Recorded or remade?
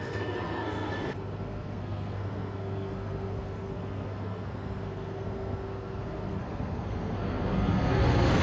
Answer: remade